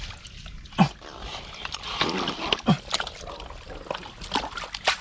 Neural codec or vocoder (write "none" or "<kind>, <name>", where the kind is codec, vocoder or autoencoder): none